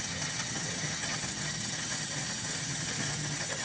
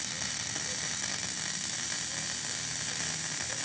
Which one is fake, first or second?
first